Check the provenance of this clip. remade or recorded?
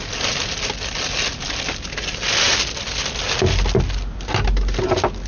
recorded